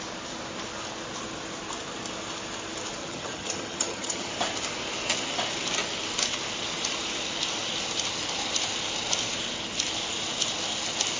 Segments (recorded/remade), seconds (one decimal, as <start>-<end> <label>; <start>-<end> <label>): 0.0-3.0 recorded; 3.0-4.3 remade; 4.3-11.2 recorded